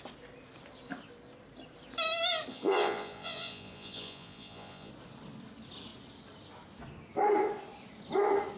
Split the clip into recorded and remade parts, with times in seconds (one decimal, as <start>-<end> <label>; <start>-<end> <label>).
0.0-2.5 recorded; 2.5-4.9 remade; 4.9-8.6 recorded